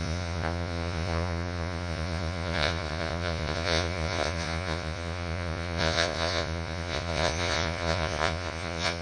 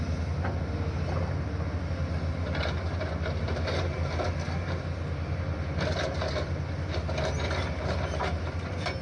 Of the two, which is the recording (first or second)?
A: second